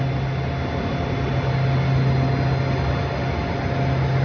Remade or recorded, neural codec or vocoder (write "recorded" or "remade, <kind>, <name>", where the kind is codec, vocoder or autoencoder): recorded